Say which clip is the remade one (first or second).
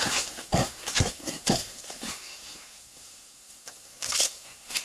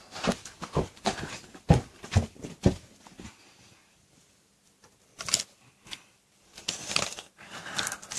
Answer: first